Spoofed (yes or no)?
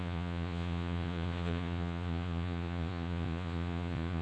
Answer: yes